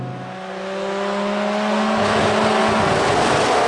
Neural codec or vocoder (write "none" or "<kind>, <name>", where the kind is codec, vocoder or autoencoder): none